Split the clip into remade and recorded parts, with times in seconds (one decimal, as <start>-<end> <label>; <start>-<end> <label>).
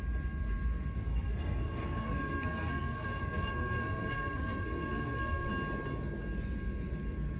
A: 0.0-1.1 recorded; 1.1-5.5 remade; 5.5-7.4 recorded